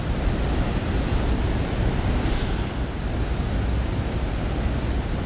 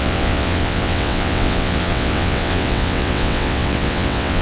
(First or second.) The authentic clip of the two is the first